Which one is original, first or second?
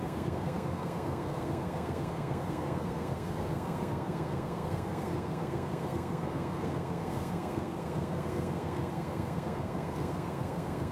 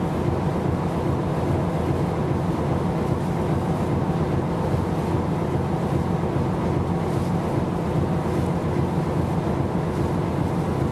second